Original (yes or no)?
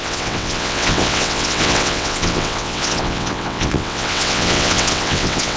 no